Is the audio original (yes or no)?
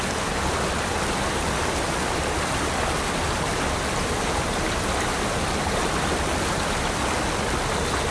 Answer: yes